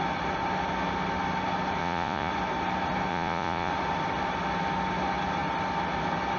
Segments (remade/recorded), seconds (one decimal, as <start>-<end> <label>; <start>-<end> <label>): 0.0-1.8 recorded; 1.8-2.3 remade; 2.3-3.1 recorded; 3.1-3.7 remade; 3.7-6.4 recorded